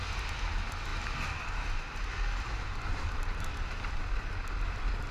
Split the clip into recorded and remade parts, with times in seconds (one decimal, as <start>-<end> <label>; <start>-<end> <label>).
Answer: 0.0-5.1 recorded